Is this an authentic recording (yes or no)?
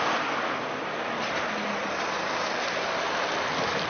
yes